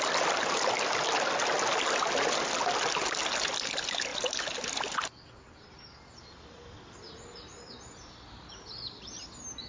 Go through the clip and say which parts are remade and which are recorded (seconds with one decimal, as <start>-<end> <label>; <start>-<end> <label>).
0.0-9.7 recorded